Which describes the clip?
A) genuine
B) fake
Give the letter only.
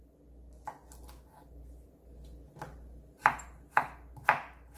A